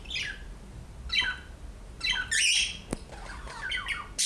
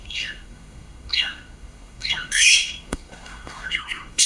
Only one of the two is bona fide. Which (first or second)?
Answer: first